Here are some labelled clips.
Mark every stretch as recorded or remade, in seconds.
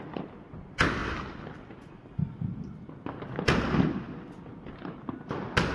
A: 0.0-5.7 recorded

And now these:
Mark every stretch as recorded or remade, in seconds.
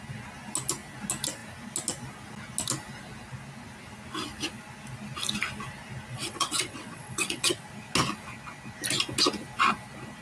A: 0.0-6.1 recorded; 6.1-7.6 remade; 7.6-10.2 recorded